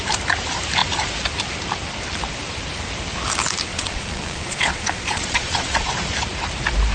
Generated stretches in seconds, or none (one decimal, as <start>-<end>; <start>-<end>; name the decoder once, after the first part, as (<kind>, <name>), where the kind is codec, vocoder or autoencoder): 3.7-5.9 (vocoder, Vocos)